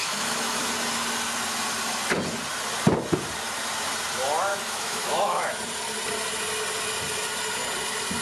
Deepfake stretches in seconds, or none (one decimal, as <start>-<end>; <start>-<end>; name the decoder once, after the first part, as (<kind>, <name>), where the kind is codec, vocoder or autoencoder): 0.0-0.7 (autoencoder, DAC-VAE); 4.5-5.6